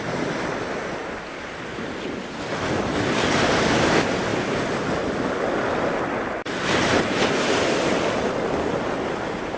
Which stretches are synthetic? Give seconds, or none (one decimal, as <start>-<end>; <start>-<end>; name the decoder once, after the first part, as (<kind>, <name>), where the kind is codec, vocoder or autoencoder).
none